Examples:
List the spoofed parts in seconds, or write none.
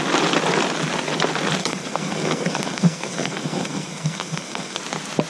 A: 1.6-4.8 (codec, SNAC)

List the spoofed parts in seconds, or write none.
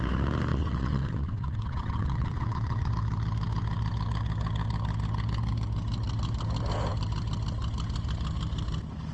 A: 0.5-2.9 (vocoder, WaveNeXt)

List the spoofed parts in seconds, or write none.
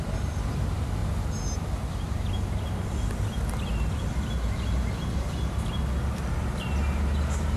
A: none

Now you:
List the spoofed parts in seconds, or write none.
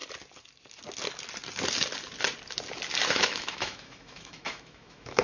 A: 3.1-5.2 (autoencoder, DAC-VAE)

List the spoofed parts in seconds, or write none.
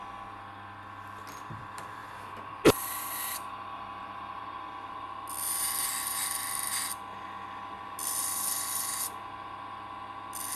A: 2.0-4.4 (vocoder, BigVGAN v2)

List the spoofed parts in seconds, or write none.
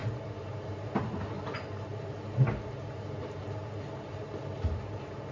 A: none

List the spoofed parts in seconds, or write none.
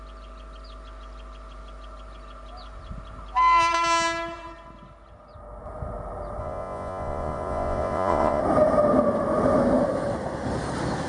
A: 6.4-8.4 (vocoder, Vocos)